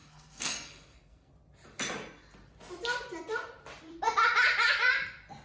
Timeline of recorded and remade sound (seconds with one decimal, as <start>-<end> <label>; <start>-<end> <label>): 0.0-1.3 remade; 1.3-5.4 recorded